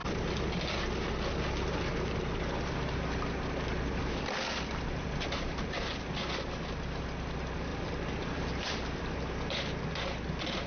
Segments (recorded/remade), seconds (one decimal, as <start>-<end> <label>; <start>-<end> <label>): 0.0-0.8 remade; 0.8-7.7 recorded; 7.7-9.0 remade; 9.0-10.7 recorded